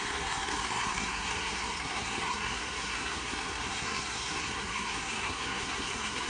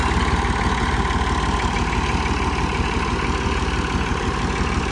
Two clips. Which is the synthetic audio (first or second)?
first